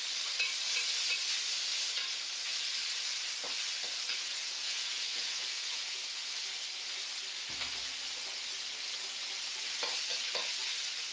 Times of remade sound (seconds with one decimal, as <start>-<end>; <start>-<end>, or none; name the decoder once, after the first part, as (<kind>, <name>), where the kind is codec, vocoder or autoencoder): 4.3-6.1 (vocoder, Vocos)